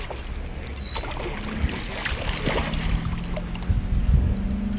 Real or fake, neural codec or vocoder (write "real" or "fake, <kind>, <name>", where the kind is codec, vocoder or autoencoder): real